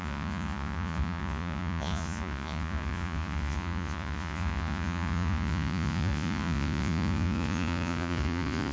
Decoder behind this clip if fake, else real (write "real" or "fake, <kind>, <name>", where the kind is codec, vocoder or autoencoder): fake, vocoder, Vocos